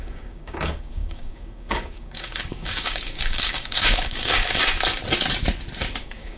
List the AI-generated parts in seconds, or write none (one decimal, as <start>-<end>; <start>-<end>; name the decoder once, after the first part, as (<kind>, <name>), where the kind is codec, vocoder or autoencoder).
0.0-4.6 (codec, DAC); 6.0-6.4